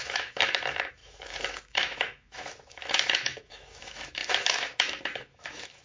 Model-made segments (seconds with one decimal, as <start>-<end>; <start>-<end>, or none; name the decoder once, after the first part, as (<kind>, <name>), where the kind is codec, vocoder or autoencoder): 0.0-5.8 (autoencoder, DAC-VAE)